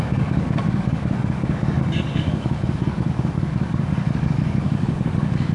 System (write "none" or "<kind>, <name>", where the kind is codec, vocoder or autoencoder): codec, DAC